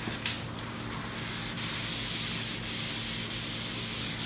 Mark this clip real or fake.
real